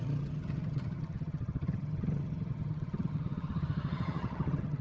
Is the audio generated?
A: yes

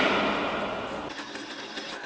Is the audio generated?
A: no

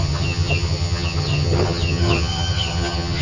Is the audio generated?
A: yes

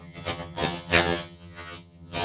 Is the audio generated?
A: yes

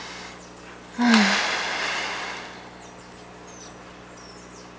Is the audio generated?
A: no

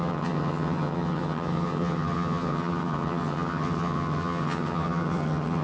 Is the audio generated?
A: yes